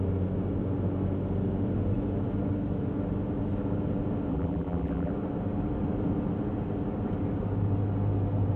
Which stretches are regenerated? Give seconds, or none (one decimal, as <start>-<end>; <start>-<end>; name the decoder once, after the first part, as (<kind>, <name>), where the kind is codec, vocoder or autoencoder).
4.3-5.1 (vocoder, BigVGAN v2)